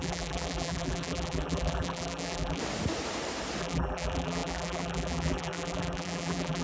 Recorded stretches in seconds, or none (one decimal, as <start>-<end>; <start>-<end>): 2.6-3.6